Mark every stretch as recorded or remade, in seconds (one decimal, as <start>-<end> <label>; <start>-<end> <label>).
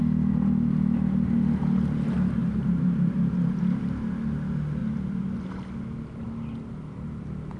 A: 0.0-2.4 recorded; 2.4-3.6 remade; 3.6-4.8 recorded; 4.8-5.4 remade; 5.4-7.6 recorded